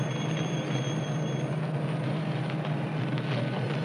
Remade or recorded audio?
recorded